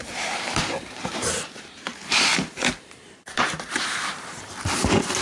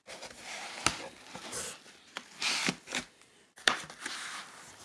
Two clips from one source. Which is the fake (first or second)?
first